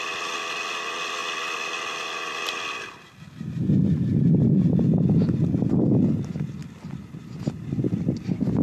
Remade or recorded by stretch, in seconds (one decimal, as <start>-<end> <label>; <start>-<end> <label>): 0.0-8.6 recorded